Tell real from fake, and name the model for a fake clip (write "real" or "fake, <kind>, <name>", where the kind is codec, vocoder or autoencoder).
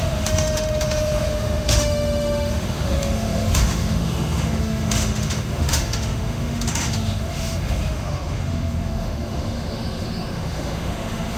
fake, autoencoder, DAC-VAE